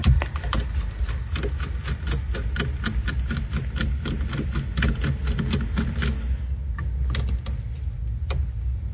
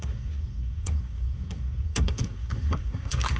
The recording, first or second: first